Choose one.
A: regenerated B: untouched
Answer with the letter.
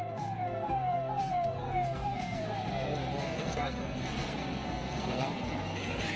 A